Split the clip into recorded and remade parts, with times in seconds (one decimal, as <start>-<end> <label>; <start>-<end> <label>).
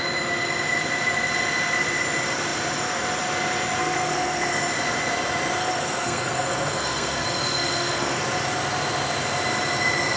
0.0-3.8 recorded; 3.8-4.6 remade; 4.6-5.6 recorded; 5.6-8.2 remade; 8.2-10.2 recorded